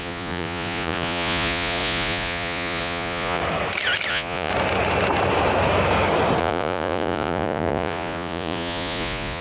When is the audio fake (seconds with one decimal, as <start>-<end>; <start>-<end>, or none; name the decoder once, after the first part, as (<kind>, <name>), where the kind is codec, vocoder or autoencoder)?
0.0-3.4 (vocoder, Vocos); 4.1-4.5; 6.4-9.4